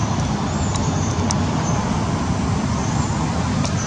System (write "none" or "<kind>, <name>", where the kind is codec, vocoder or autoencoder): none